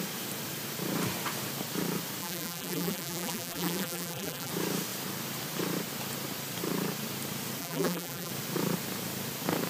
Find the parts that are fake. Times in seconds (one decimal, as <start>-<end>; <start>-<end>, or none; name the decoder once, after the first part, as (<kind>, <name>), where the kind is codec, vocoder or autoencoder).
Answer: 2.2-4.5 (vocoder, BigVGAN v2); 7.6-8.3